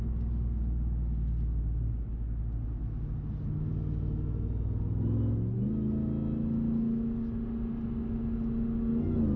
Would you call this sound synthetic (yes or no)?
no